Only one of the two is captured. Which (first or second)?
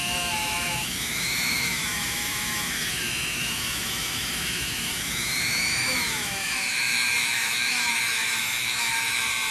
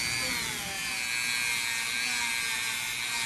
second